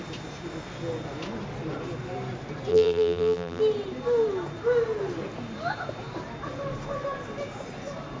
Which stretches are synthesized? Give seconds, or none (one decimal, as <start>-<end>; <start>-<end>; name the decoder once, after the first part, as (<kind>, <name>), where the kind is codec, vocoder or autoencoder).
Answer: 2.7-3.6 (vocoder, BigVGAN v2)